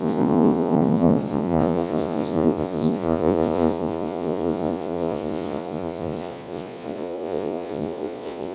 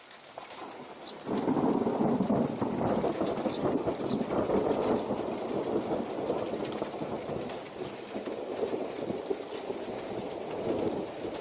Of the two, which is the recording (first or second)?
second